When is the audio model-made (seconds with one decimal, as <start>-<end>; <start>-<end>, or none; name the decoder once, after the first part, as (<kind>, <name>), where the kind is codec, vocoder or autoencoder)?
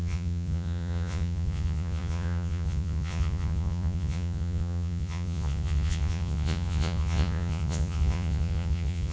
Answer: 0.0-9.1 (vocoder, Vocos)